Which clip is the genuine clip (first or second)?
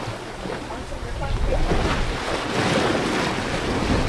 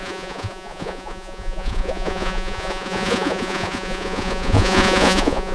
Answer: first